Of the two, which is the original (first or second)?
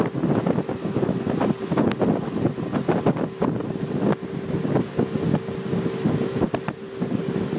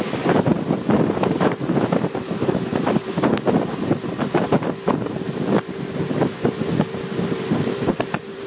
first